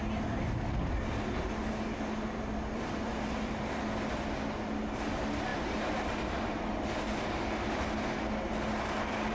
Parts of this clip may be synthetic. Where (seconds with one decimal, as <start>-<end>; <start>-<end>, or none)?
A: 5.5-6.9